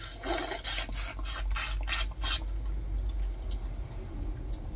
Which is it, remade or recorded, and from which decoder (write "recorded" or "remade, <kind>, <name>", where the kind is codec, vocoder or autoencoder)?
recorded